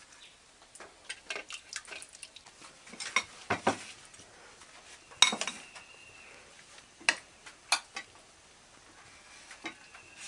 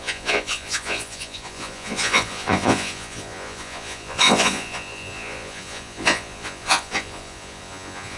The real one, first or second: first